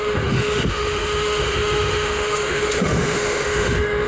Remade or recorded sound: remade